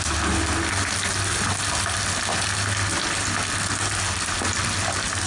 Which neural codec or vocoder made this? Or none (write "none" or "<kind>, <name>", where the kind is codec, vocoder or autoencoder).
none